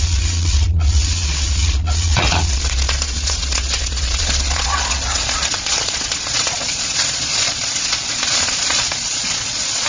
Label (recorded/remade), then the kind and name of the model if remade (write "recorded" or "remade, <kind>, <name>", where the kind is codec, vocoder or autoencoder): remade, vocoder, Vocos